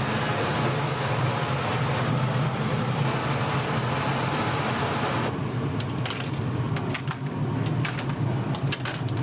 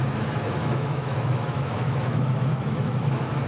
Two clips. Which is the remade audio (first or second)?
second